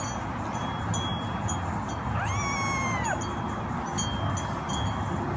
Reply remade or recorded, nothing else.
recorded